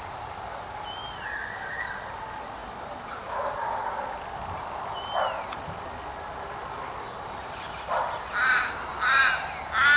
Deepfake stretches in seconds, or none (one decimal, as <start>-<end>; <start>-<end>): none